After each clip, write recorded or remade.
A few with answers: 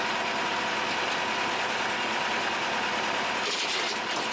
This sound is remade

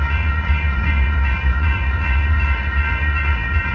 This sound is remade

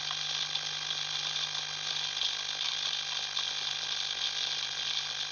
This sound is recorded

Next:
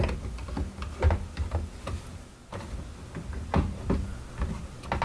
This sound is recorded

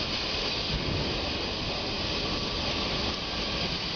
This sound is recorded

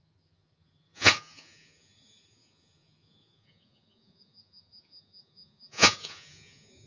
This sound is remade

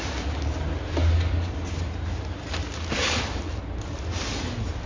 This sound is recorded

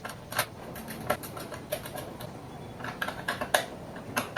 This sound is recorded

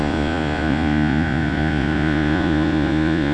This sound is remade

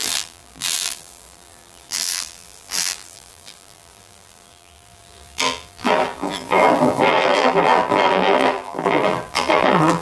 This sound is remade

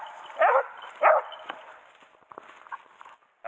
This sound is recorded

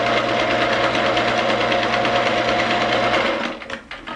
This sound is recorded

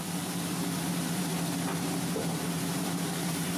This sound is remade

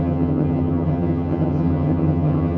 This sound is remade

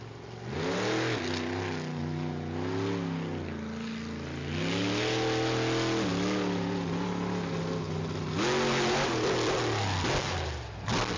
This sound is recorded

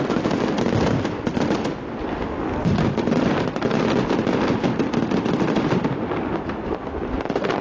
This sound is recorded